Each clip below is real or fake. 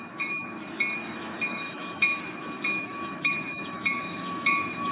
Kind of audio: fake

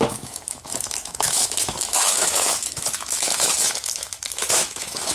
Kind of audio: fake